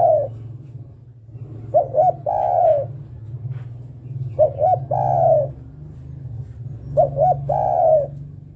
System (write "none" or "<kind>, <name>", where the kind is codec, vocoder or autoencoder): none